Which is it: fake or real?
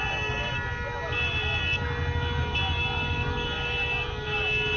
real